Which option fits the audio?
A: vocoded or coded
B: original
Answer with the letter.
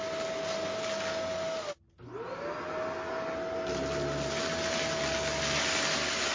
B